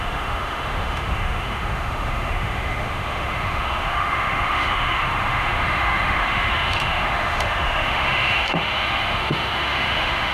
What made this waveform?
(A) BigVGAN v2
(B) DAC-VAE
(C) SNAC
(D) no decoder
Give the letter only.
B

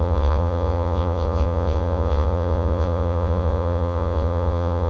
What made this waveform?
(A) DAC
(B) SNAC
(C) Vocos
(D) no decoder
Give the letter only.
C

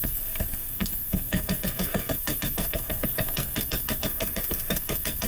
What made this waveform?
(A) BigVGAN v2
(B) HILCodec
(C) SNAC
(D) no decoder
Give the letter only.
C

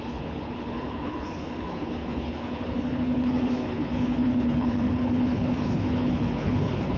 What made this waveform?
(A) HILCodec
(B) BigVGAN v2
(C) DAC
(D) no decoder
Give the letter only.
A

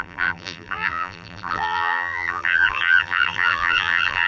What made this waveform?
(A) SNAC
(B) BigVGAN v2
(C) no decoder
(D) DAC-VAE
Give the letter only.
B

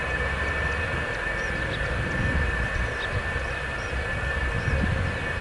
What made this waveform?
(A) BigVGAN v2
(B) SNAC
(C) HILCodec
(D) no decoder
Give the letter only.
D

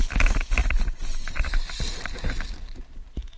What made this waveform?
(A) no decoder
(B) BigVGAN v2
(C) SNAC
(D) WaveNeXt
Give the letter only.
A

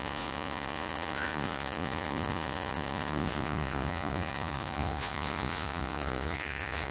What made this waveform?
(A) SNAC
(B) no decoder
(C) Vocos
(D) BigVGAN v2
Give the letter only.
C